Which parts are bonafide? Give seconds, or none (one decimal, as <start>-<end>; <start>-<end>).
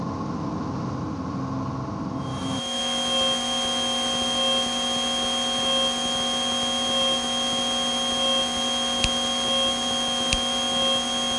0.0-2.3; 2.8-11.4